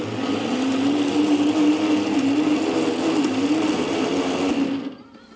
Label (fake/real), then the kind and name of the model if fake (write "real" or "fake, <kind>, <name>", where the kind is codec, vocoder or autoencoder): real